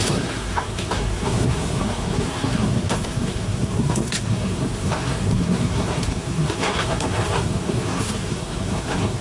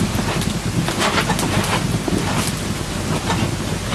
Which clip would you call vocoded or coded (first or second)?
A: first